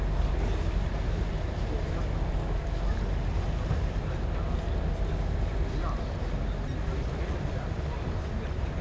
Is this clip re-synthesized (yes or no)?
no